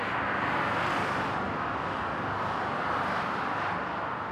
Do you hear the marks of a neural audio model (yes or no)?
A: no